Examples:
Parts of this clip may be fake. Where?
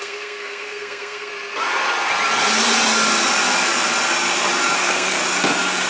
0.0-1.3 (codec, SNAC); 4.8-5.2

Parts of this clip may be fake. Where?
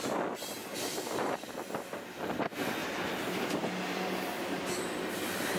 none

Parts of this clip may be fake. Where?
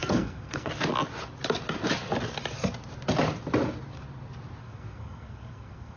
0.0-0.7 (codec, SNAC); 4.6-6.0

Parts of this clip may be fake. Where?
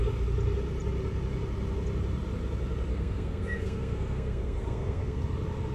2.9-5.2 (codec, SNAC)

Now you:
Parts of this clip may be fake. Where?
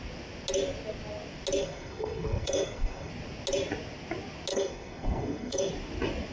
1.6-3.1 (codec, SNAC); 4.5-5.7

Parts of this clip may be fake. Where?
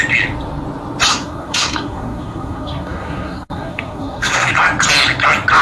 1.1-4.5 (codec, SNAC)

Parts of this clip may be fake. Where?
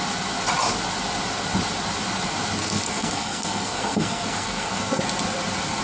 2.6-5.0 (codec, SNAC)